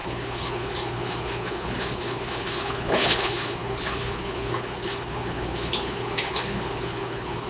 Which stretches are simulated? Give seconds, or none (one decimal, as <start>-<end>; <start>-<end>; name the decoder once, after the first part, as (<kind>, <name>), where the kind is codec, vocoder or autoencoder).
0.0-7.5 (codec, HILCodec)